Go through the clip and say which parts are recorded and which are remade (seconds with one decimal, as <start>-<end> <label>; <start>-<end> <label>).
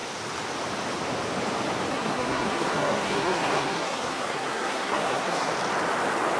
0.0-1.9 recorded; 1.9-5.5 remade; 5.5-6.4 recorded